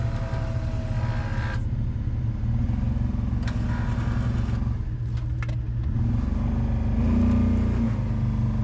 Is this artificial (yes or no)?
no